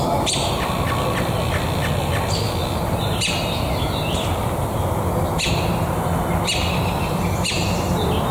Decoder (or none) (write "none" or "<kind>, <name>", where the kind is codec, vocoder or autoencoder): none